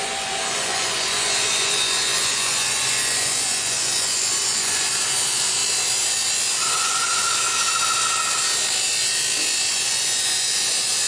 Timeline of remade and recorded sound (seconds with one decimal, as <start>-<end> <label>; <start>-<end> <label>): 0.0-5.6 remade; 5.6-6.6 recorded; 6.6-7.2 remade; 7.2-9.7 recorded; 9.7-11.1 remade

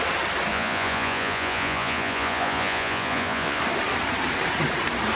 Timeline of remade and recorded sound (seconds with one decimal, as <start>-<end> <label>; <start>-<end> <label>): 0.0-0.5 recorded; 0.5-3.6 remade; 3.6-5.2 recorded